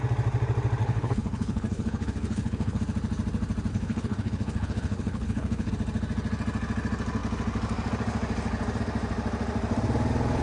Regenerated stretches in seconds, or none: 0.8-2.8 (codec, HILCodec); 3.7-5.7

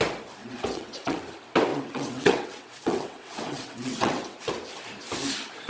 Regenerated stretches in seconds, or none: 0.4-1.2 (vocoder, WaveNeXt); 1.7-4.5

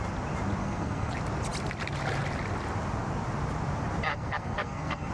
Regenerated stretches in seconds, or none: 0.6-1.1 (codec, SNAC); 4.1-5.1